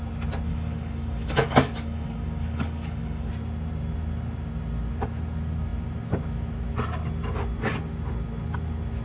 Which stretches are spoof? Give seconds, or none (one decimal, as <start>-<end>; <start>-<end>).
0.5-3.3